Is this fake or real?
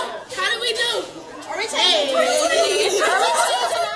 fake